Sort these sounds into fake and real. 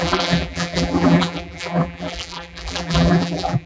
fake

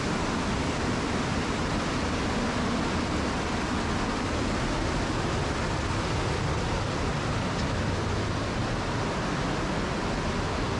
real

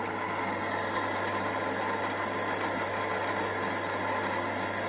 real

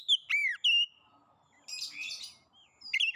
real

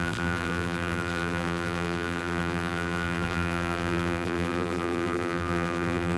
fake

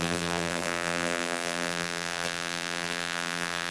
fake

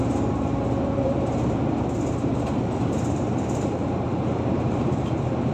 fake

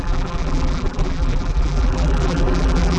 fake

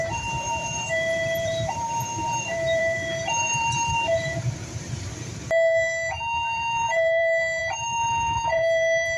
fake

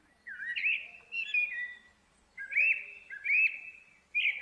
real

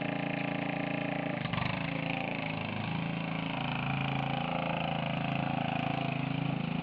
real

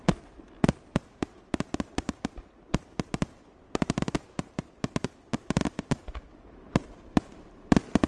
real